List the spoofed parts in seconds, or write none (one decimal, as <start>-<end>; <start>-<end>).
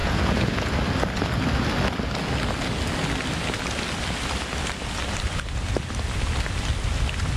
0.0-0.7